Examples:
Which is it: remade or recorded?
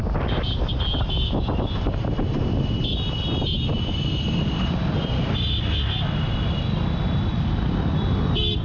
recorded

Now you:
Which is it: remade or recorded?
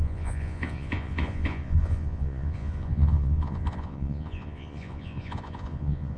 remade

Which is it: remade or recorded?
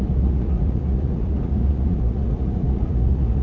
remade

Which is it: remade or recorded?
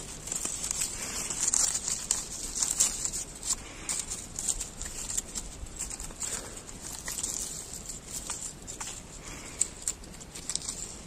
recorded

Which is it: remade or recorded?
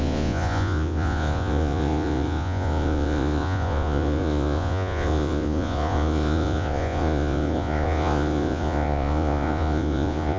remade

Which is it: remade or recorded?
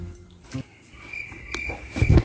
recorded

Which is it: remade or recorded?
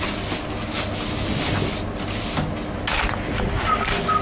recorded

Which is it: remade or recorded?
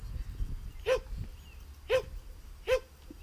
recorded